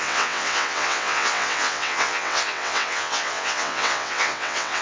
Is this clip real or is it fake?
fake